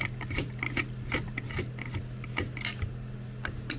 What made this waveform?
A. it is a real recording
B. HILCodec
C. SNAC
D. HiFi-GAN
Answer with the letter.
A